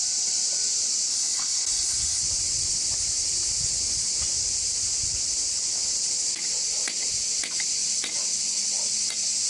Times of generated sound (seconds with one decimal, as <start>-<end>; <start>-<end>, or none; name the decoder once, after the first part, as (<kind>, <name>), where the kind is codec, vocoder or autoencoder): 1.1-2.2 (codec, HILCodec)

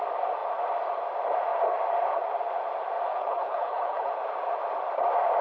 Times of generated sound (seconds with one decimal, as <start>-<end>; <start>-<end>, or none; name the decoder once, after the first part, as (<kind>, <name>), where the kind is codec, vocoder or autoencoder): 3.1-4.1 (codec, HILCodec)

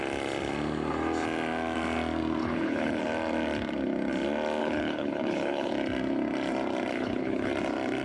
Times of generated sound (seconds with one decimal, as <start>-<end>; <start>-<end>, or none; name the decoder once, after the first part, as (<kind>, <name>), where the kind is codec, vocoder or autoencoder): 2.4-3.0 (codec, HILCodec); 4.6-5.7; 6.9-7.5

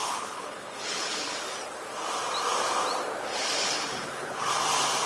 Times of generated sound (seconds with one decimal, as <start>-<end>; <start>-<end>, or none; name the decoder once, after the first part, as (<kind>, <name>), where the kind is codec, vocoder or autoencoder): 0.0-1.4 (codec, HILCodec); 3.3-4.5

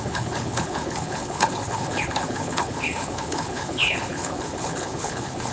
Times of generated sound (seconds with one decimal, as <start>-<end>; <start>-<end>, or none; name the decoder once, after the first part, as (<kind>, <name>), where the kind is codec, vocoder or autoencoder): 0.0-5.5 (codec, HILCodec)

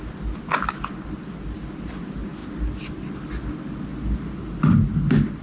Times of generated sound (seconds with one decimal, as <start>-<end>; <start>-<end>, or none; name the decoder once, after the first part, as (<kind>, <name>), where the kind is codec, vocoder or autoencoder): none

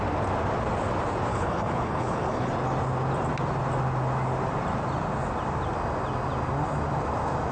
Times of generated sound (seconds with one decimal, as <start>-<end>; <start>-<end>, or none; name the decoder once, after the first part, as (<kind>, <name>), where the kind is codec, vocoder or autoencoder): 1.3-2.5 (codec, HILCodec)